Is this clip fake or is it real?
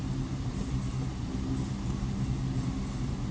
real